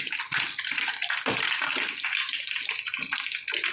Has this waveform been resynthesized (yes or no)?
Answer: no